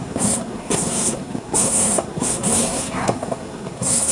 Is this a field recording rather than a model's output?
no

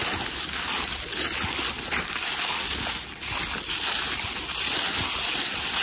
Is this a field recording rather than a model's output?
yes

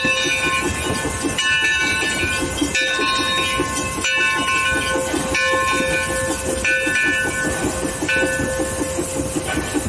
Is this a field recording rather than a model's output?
yes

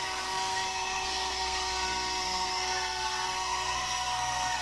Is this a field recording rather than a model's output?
no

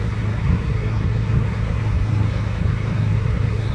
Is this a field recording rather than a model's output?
no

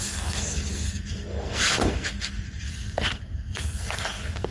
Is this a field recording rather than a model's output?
no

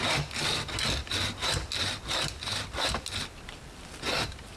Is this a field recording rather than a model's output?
yes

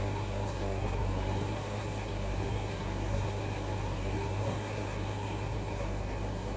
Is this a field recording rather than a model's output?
no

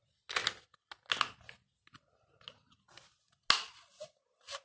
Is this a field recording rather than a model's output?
yes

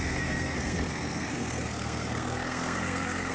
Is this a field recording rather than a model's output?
no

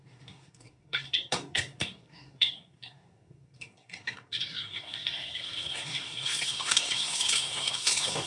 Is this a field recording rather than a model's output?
no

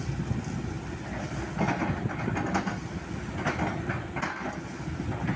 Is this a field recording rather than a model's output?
yes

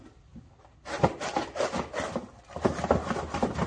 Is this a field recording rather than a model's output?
yes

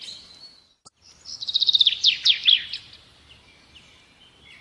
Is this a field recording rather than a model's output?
yes